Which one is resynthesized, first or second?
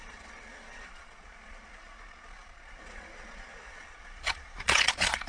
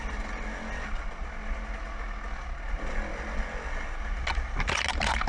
first